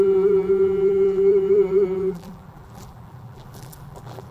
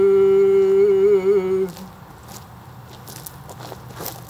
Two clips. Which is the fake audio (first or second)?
first